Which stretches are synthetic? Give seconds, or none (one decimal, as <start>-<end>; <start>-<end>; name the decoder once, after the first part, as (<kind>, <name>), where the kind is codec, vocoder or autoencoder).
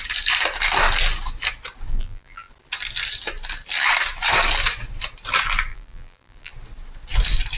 1.9-2.5 (vocoder, BigVGAN v2); 5.7-6.5